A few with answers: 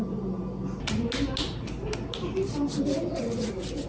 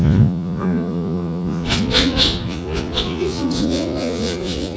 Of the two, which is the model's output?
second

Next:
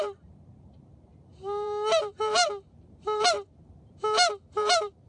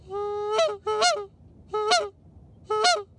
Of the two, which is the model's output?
first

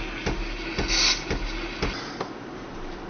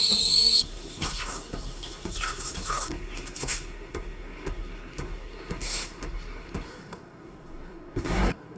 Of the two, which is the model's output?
second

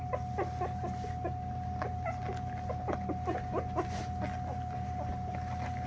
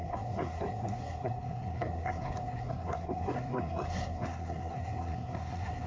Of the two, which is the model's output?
second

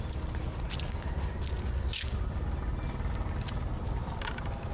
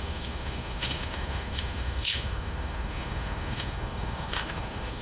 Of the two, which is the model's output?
second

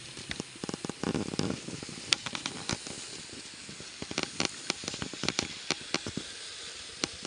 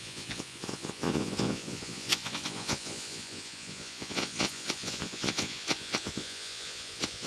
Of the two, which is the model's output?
second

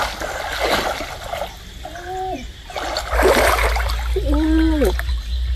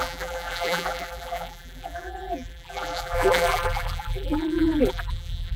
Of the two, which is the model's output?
second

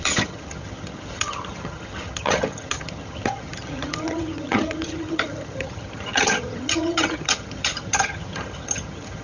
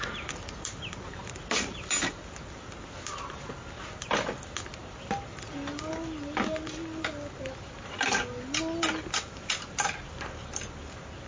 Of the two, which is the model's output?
first